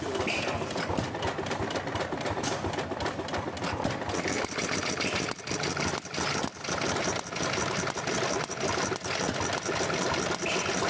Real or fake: real